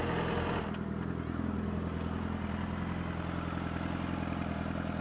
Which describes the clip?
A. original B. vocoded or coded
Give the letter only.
A